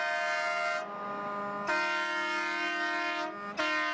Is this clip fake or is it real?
real